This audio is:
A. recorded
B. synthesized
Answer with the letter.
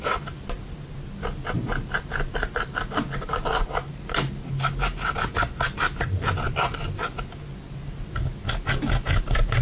A